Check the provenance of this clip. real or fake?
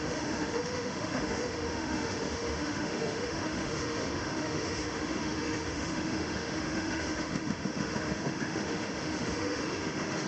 fake